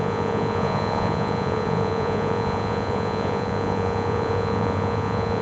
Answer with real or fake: fake